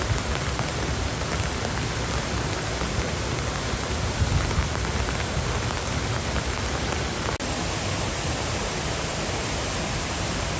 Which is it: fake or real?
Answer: real